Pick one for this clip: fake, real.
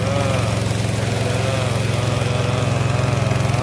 real